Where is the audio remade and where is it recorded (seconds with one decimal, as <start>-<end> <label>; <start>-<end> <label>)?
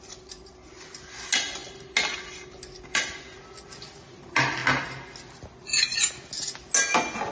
0.0-7.3 recorded